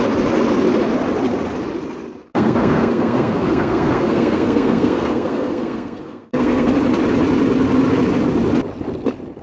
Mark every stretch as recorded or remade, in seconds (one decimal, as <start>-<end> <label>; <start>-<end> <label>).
0.0-2.3 recorded; 2.3-6.7 remade; 6.7-9.4 recorded